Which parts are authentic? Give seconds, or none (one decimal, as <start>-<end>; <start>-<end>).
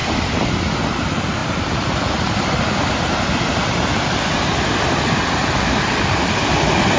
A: 0.0-7.0